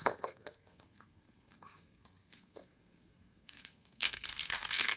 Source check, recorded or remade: remade